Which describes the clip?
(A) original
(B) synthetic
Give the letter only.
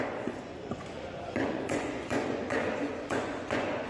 B